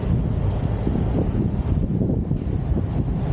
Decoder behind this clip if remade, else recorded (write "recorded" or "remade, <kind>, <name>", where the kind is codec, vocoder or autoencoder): recorded